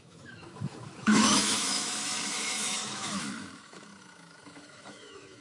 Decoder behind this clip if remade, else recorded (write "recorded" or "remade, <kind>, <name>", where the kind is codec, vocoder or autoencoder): remade, autoencoder, DAC-VAE